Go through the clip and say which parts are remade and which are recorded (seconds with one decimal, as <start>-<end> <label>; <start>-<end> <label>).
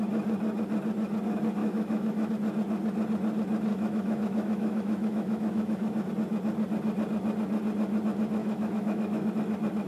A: 0.0-1.6 recorded; 1.6-2.3 remade; 2.3-3.7 recorded; 3.7-6.1 remade; 6.1-8.4 recorded; 8.4-9.3 remade; 9.3-9.9 recorded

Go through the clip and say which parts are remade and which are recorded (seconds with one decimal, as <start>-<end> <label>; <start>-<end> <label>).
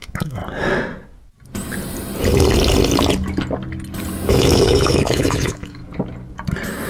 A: 0.0-0.4 remade; 0.4-4.3 recorded; 4.3-5.8 remade; 5.8-6.9 recorded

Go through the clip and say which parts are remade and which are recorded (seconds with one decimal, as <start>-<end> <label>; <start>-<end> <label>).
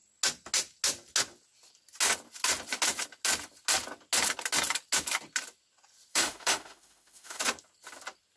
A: 0.0-6.1 recorded; 6.1-7.4 remade; 7.4-8.4 recorded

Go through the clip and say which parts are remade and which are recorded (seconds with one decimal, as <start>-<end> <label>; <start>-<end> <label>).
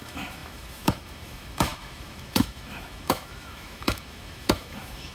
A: 0.0-5.1 remade